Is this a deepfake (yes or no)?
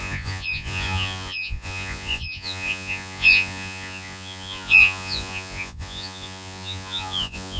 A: yes